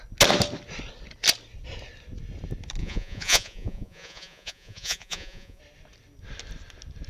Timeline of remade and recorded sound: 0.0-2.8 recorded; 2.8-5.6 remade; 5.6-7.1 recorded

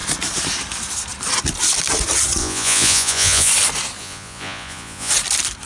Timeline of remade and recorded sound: 0.0-2.4 recorded; 2.4-3.5 remade; 3.5-4.0 recorded; 4.0-5.1 remade; 5.1-5.7 recorded

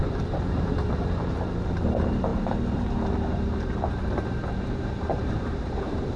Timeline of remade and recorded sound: 0.0-6.2 remade

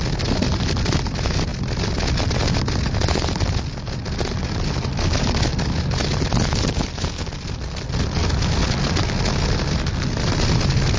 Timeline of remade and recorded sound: 0.0-11.0 recorded

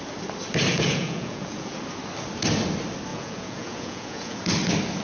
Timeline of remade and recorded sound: 0.0-0.7 recorded; 0.7-1.8 remade; 1.8-3.1 recorded; 3.1-4.4 remade; 4.4-5.0 recorded

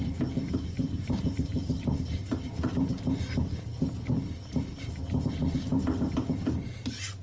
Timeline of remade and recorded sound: 0.0-1.0 recorded; 1.0-2.5 remade; 2.5-7.2 recorded

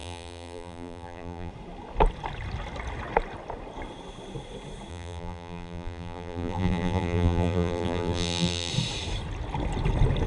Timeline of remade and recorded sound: 0.0-1.5 remade; 1.5-4.9 recorded; 4.9-8.7 remade; 8.7-10.3 recorded